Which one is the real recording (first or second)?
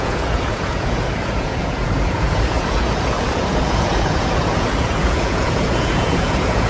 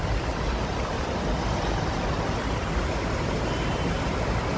second